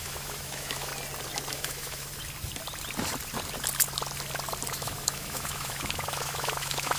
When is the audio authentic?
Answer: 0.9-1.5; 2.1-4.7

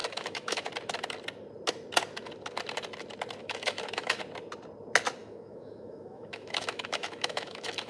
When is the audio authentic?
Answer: 0.7-3.4; 4.2-5.2

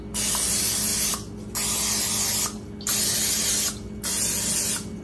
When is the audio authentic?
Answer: 0.0-5.0

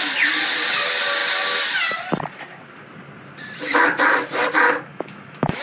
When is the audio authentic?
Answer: 0.0-4.9

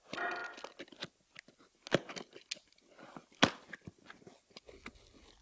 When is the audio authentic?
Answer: 0.0-5.4

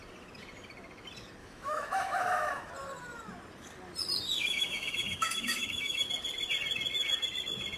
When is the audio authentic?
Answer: 0.0-1.4; 2.7-4.4; 6.0-7.8